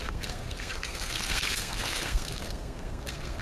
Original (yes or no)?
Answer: no